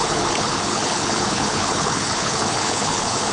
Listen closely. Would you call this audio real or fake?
fake